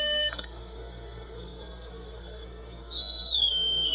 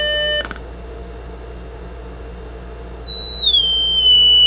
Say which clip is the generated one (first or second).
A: first